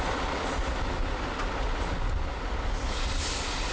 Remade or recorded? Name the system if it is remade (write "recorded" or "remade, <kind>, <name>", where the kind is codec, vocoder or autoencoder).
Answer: recorded